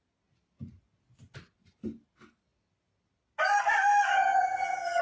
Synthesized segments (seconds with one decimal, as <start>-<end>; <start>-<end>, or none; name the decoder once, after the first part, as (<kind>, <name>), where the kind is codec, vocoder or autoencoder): 4.1-5.0 (vocoder, HiFi-GAN)